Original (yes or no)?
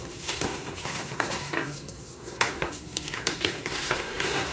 no